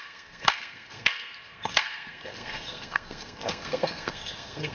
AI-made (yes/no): yes